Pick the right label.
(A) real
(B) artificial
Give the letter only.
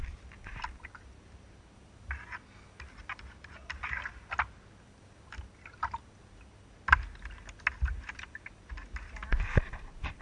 A